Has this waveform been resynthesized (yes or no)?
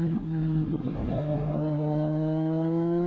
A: yes